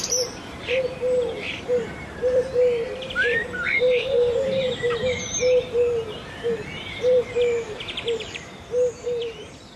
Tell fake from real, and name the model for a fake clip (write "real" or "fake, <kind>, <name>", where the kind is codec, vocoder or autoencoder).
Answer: fake, vocoder, BigVGAN v2